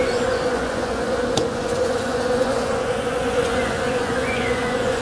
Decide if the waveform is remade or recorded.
remade